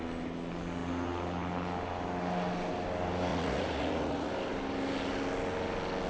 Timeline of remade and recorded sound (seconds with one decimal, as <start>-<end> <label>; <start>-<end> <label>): 0.0-3.3 recorded; 3.3-4.3 remade; 4.3-6.1 recorded